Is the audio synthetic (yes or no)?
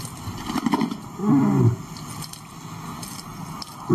no